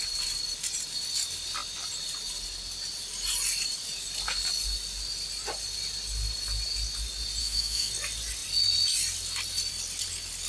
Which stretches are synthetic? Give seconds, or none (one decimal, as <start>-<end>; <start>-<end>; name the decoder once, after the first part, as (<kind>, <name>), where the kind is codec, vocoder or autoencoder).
7.4-7.9 (autoencoder, DAC-VAE)